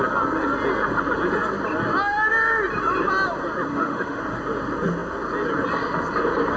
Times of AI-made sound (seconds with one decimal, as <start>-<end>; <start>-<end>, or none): 3.7-4.2